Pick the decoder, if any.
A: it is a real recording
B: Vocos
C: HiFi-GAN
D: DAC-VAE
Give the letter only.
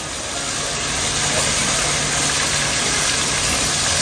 A